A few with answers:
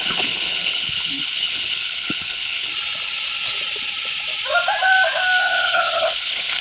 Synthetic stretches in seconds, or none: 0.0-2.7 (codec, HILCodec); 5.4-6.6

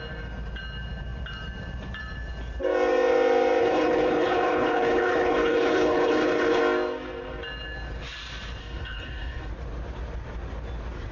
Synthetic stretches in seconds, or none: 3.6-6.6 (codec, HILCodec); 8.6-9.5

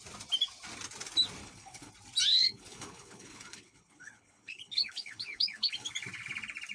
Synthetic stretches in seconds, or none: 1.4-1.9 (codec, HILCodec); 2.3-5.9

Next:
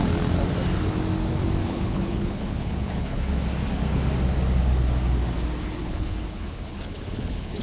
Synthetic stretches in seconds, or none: 1.6-3.3 (codec, HILCodec); 5.8-7.6

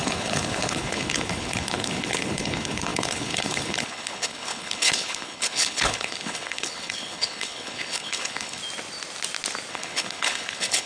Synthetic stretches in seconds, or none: 0.0-8.6 (codec, HILCodec); 9.7-10.9